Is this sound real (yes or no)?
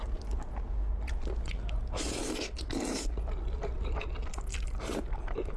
yes